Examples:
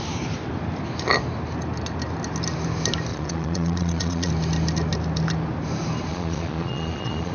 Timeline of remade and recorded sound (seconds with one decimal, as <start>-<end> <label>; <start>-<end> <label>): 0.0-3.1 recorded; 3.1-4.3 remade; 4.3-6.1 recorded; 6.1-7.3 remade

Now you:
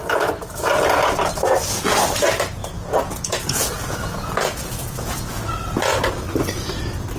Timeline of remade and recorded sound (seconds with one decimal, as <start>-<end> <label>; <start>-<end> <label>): 0.0-2.6 recorded; 2.6-5.4 remade; 5.4-7.2 recorded

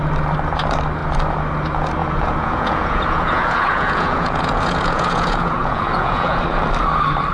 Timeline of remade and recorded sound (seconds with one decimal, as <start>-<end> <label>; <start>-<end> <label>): 0.0-2.0 recorded; 2.0-6.4 remade; 6.4-7.3 recorded